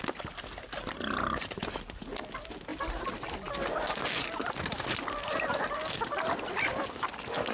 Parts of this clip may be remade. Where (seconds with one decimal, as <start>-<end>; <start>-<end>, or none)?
none